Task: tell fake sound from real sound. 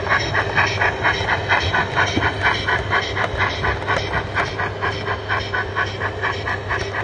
real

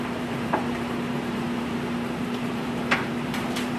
fake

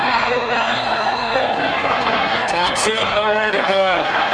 fake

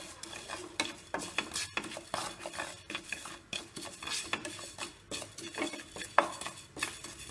real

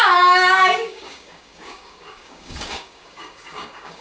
fake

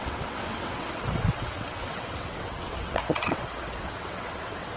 fake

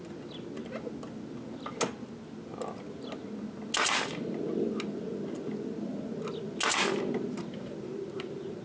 real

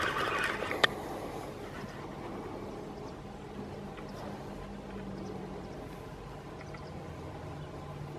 real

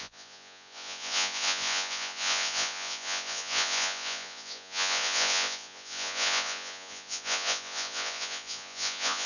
fake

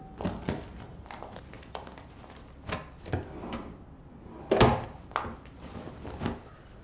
real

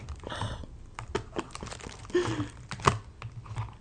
real